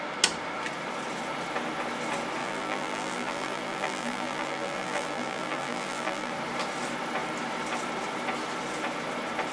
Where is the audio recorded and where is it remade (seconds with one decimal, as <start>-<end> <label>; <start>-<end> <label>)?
0.0-2.4 recorded; 2.4-6.3 remade; 6.3-9.5 recorded